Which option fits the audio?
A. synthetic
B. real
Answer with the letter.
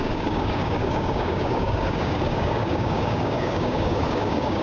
A